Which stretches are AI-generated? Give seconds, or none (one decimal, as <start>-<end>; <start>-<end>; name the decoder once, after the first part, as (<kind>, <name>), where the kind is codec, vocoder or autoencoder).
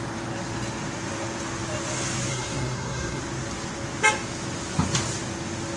2.3-3.2 (codec, SNAC)